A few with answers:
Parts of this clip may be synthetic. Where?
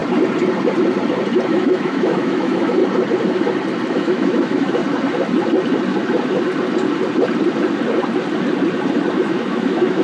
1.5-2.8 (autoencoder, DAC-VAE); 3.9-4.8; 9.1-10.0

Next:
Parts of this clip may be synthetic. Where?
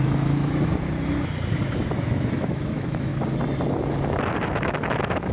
0.0-0.7 (autoencoder, DAC-VAE); 1.9-3.1; 4.5-5.3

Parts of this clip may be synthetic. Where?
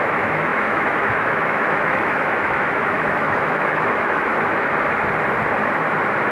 0.0-4.3 (autoencoder, DAC-VAE)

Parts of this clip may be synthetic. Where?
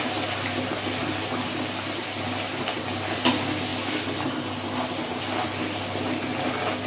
none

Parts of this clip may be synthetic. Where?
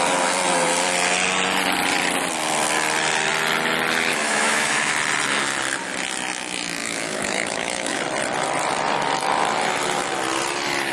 4.1-4.9 (autoencoder, DAC-VAE); 6.8-8.0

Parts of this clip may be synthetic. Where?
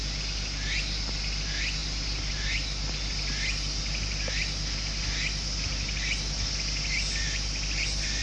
none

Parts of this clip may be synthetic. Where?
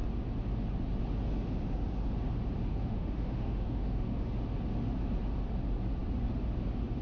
2.7-4.3 (autoencoder, DAC-VAE)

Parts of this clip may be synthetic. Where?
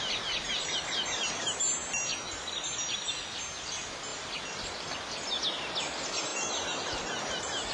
none